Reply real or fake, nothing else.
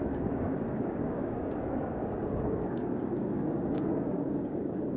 fake